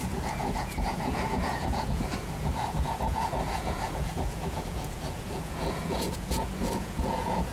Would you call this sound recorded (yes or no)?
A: no